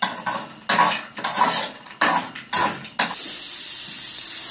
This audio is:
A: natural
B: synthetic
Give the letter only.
A